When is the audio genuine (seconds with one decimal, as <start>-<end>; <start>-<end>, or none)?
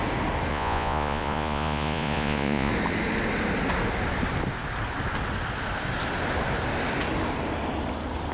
0.0-0.5; 2.7-8.3